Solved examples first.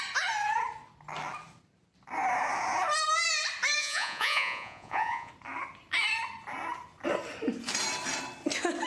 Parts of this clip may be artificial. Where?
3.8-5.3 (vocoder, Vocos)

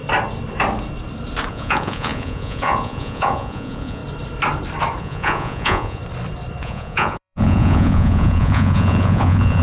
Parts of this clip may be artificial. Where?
1.5-4.0 (vocoder, Vocos); 5.0-6.0; 6.6-9.6